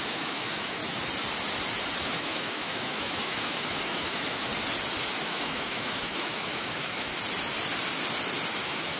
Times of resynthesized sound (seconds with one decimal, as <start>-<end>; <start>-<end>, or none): 0.0-0.8; 2.0-4.5; 5.2-7.1; 8.6-9.0